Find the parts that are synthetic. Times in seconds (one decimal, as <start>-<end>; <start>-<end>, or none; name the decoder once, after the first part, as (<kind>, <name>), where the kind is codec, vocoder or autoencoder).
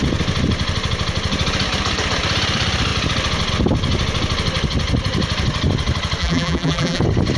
6.2-7.0 (vocoder, BigVGAN v2)